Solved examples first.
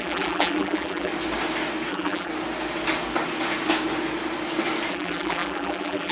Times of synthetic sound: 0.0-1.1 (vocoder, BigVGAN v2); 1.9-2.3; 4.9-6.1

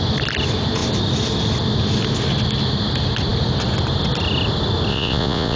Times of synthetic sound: 4.9-5.6 (vocoder, Vocos)

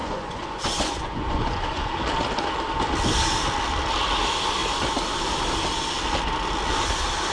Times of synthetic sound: 0.0-1.9 (vocoder, Vocos)

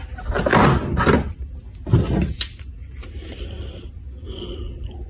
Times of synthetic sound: none

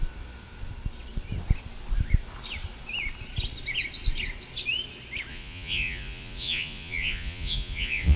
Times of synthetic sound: 5.3-8.2 (vocoder, Vocos)

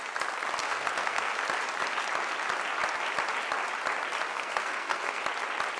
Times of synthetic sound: 0.6-1.4 (codec, SNAC); 4.3-5.2

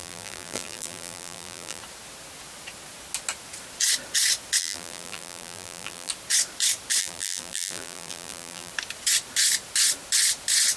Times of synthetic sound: 0.0-1.8 (vocoder, BigVGAN v2); 4.6-6.1; 7.0-8.7